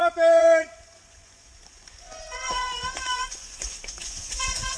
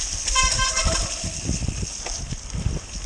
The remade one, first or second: first